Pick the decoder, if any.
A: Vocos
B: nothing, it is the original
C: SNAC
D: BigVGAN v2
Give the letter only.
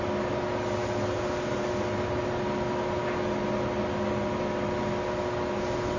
B